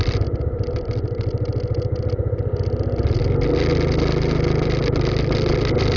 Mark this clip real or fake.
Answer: real